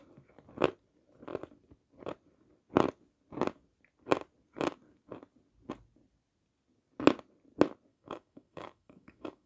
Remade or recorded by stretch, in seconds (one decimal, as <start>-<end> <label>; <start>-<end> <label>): 0.0-7.9 recorded; 7.9-9.5 remade

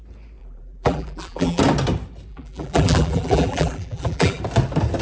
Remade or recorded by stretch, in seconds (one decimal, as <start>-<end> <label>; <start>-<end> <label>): 0.0-0.4 recorded; 0.4-1.6 remade; 1.6-2.3 recorded; 2.3-4.4 remade; 4.4-5.0 recorded

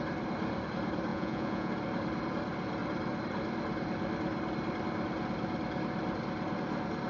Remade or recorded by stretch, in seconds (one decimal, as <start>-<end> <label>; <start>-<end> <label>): 0.0-1.1 recorded; 1.1-1.7 remade; 1.7-7.1 recorded

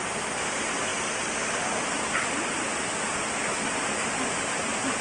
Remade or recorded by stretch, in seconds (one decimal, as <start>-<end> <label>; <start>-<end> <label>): 0.0-5.0 recorded

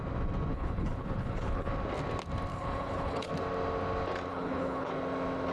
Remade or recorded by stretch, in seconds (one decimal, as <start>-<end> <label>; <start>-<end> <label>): 0.0-0.5 recorded; 0.5-1.7 remade; 1.7-2.5 recorded; 2.5-3.3 remade; 3.3-4.3 recorded; 4.3-4.9 remade; 4.9-5.5 recorded